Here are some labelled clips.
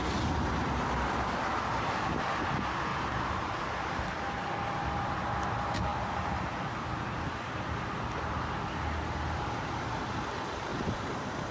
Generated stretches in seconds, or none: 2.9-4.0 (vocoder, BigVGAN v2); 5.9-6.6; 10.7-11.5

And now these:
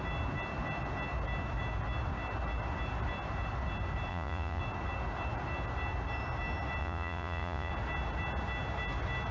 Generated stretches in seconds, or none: 4.1-4.6 (vocoder, Vocos); 6.8-7.7

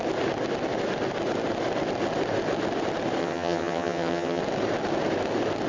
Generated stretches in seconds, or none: 3.2-4.4 (vocoder, HiFi-GAN)

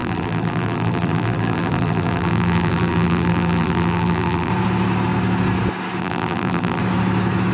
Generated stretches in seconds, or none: 0.0-4.5 (vocoder, BigVGAN v2); 6.0-6.8

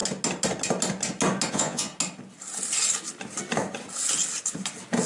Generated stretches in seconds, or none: 1.5-1.9 (vocoder, Vocos)

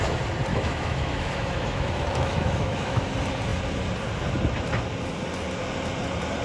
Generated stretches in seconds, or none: 0.5-3.1 (autoencoder, DAC-VAE)

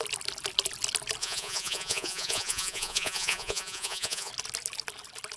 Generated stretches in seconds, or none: 1.2-4.3 (vocoder, Vocos)

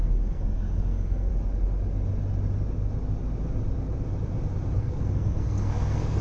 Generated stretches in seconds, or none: 0.0-1.3 (codec, SNAC); 4.8-6.2